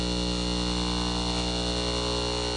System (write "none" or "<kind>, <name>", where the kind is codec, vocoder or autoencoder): none